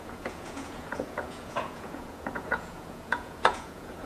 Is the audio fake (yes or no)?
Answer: yes